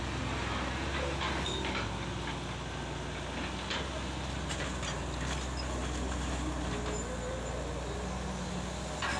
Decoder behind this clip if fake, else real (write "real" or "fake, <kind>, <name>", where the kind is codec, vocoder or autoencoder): real